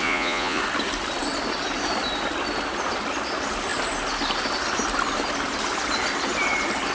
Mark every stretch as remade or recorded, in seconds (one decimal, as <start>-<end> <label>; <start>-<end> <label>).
0.0-0.6 remade; 0.6-6.9 recorded